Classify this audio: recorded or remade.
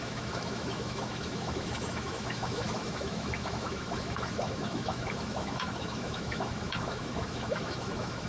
remade